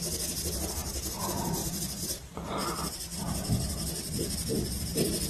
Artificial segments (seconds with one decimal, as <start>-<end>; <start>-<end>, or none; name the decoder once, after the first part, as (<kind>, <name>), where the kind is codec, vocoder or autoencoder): 1.6-4.8 (vocoder, BigVGAN v2)